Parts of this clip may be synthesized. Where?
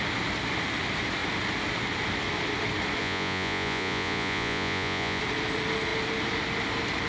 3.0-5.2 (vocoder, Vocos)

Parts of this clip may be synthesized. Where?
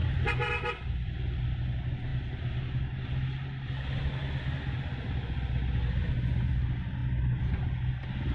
0.0-1.4 (vocoder, BigVGAN v2)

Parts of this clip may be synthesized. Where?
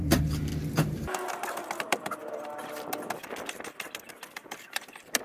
0.0-0.5 (vocoder, BigVGAN v2); 1.8-2.2; 4.1-5.2